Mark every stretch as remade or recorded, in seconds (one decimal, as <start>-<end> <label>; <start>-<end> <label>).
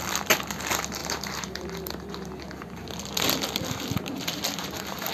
0.0-1.0 remade; 1.0-4.1 recorded; 4.1-5.1 remade